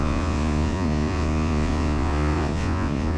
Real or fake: fake